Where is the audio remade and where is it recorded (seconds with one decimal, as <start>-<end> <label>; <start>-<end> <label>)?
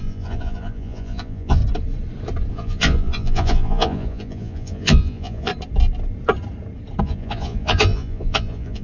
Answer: 0.0-1.6 remade; 1.6-2.5 recorded; 2.5-5.5 remade; 5.5-7.0 recorded; 7.0-8.8 remade